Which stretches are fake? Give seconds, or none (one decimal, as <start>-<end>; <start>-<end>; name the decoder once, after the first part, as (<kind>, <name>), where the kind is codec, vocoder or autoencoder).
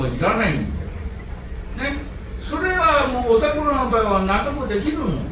0.0-1.7 (vocoder, Vocos); 2.8-5.3